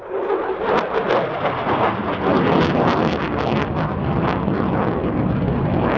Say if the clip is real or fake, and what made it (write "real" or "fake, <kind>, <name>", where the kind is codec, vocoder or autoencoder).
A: real